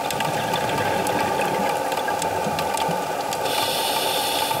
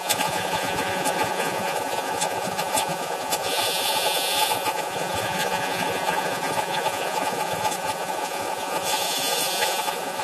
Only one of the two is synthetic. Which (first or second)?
second